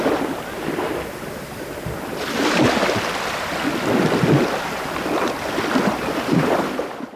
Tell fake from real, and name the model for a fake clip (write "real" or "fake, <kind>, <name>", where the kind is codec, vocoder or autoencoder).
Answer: real